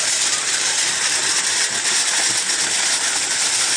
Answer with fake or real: real